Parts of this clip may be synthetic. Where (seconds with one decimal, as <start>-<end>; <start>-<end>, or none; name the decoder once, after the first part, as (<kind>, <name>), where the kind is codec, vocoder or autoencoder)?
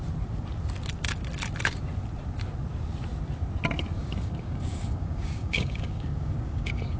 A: 4.0-7.0 (codec, DAC)